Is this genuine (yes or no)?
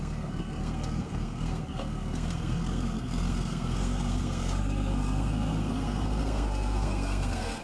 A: no